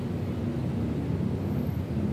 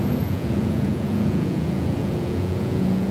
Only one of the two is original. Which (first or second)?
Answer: first